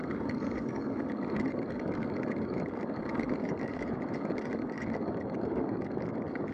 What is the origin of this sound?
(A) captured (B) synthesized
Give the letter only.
B